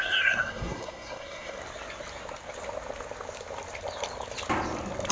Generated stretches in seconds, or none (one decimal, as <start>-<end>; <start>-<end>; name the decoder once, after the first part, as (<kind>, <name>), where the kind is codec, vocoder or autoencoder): 0.0-1.6 (codec, SNAC)